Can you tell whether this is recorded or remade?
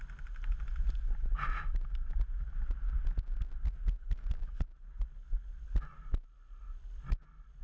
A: recorded